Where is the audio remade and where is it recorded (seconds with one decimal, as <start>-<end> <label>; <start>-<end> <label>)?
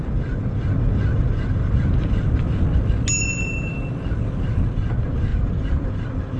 0.0-5.3 recorded; 5.3-5.9 remade; 5.9-6.4 recorded